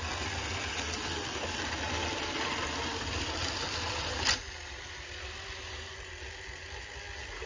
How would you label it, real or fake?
real